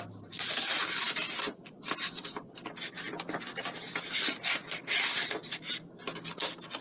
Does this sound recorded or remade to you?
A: recorded